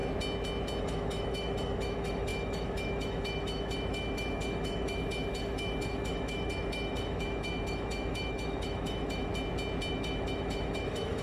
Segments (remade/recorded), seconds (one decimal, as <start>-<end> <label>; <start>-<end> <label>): 0.0-0.8 recorded; 0.8-9.3 remade; 9.3-9.9 recorded; 9.9-11.2 remade